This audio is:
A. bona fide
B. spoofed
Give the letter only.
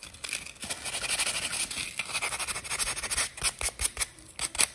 A